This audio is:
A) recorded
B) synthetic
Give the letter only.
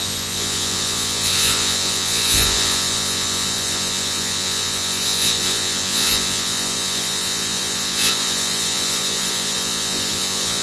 B